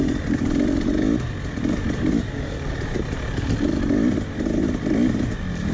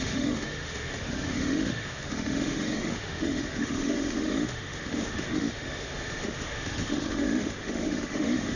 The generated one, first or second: second